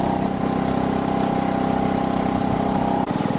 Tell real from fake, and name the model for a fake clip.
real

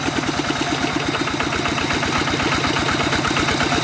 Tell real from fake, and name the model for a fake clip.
real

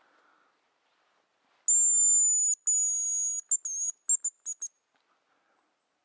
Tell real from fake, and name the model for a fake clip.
real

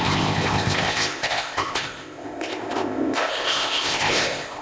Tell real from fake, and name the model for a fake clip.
fake, codec, ZipCodec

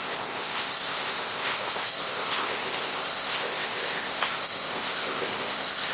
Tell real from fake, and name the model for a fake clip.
fake, codec, ZipCodec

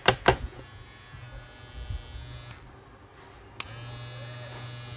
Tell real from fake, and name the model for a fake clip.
real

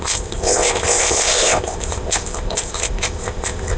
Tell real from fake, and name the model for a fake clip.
fake, codec, ZipCodec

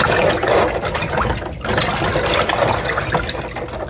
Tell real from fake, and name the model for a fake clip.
real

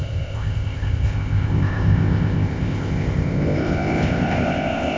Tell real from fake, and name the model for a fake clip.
fake, codec, ZipCodec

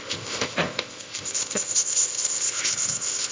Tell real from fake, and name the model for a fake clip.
fake, codec, ZipCodec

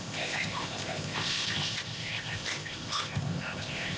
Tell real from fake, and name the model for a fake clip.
fake, codec, ZipCodec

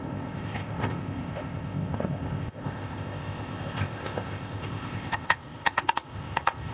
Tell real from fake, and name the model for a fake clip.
fake, codec, ZipCodec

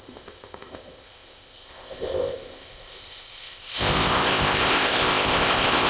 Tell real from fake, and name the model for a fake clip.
fake, codec, ZipCodec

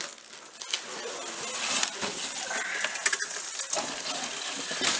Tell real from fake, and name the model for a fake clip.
real